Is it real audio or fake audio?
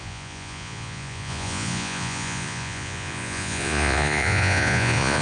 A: fake